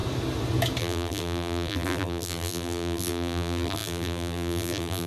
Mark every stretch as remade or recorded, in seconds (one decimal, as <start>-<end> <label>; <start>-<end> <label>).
0.0-0.8 recorded; 0.8-5.1 remade